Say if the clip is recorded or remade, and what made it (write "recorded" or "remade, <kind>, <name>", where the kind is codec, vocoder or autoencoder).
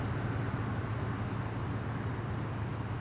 recorded